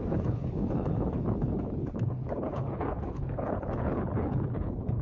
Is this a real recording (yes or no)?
no